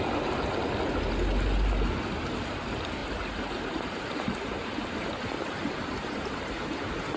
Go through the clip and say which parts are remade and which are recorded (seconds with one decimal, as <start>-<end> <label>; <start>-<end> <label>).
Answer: 0.0-3.0 recorded; 3.0-7.2 remade